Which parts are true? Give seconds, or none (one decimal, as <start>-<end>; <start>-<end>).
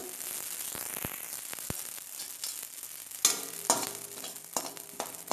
0.0-5.3